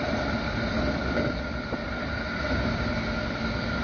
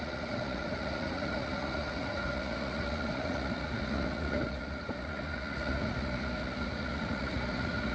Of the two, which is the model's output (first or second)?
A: second